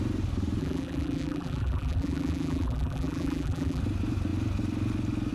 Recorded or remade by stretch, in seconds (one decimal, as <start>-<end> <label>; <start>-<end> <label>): 0.0-0.6 recorded; 0.6-3.8 remade; 3.8-5.3 recorded